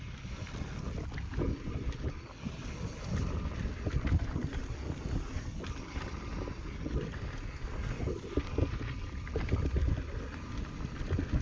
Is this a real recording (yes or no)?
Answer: yes